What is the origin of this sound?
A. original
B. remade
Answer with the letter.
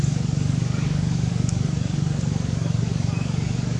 B